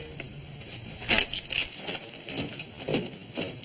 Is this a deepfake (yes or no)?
no